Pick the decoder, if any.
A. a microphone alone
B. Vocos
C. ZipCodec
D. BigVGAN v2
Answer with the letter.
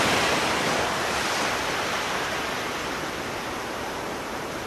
A